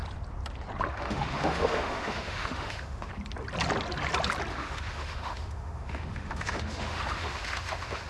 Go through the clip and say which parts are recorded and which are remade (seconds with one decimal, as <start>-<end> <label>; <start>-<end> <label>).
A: 0.0-0.9 recorded; 0.9-3.1 remade; 3.1-4.5 recorded; 4.5-8.1 remade